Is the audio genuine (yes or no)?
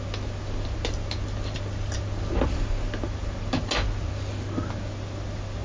yes